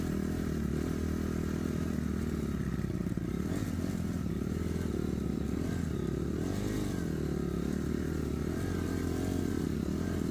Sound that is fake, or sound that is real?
real